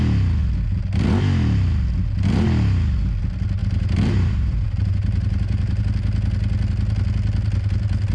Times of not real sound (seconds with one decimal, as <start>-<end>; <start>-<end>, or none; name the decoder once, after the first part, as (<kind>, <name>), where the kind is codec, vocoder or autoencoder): 3.6-5.8 (vocoder, BigVGAN v2)